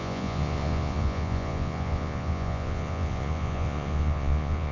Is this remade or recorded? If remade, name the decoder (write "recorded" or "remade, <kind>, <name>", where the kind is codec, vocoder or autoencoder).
remade, vocoder, Vocos